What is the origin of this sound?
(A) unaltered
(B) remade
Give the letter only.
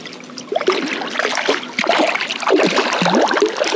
A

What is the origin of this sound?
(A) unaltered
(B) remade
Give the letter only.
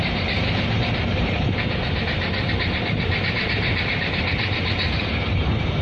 B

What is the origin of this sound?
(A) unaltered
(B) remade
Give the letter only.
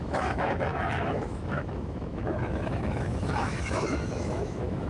B